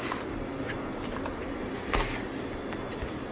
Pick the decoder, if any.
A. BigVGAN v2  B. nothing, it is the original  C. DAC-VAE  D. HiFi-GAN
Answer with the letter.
B